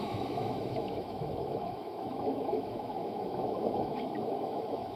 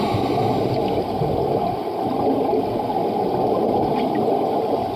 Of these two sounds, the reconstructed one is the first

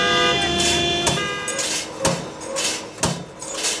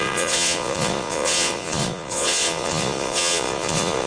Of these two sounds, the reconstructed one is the second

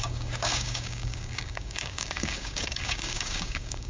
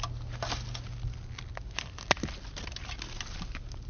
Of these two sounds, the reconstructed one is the first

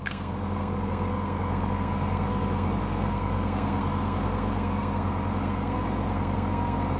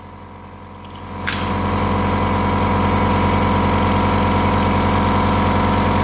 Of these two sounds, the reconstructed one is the first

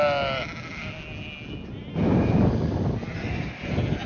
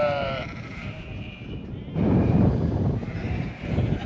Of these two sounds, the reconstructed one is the second